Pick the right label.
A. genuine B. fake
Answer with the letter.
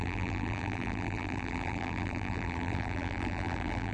B